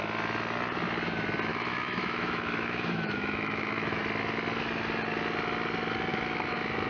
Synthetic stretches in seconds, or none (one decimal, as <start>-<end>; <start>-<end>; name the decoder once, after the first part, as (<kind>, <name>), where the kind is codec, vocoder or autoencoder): 1.5-4.0 (autoencoder, DAC-VAE); 6.1-6.9